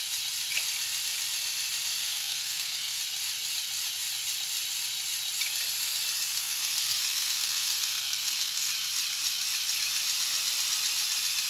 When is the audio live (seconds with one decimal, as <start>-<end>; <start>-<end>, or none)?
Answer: 0.0-2.0; 3.0-6.3; 8.7-11.5